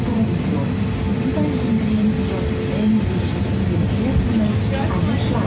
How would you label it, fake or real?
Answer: real